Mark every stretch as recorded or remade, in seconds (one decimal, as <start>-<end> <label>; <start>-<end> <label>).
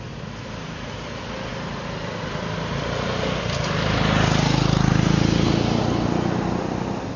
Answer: 0.0-7.2 recorded